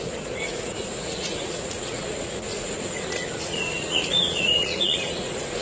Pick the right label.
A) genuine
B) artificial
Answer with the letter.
B